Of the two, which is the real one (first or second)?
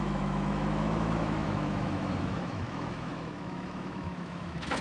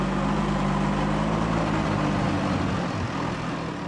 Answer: second